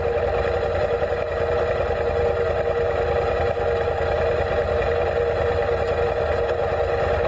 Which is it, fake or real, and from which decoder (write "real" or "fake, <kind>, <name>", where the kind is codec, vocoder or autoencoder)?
real